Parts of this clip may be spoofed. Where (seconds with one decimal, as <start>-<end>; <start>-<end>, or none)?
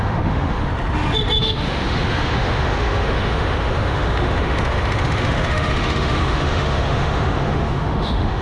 0.0-0.7; 1.4-8.4